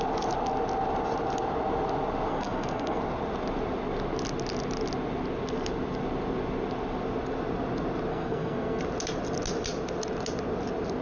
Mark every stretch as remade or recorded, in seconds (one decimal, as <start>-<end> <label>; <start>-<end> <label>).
0.0-2.3 recorded; 2.3-3.0 remade; 3.0-8.1 recorded; 8.1-8.8 remade; 8.8-11.0 recorded